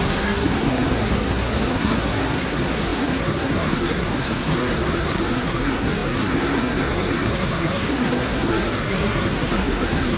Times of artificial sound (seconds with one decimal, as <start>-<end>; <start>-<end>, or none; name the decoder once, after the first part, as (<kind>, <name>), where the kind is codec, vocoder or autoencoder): 0.0-10.2 (codec, SNAC)